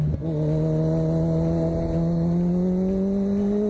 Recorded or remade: recorded